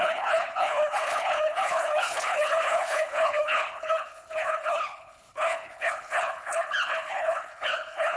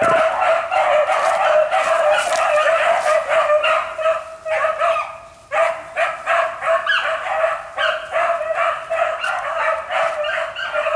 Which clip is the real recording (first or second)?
second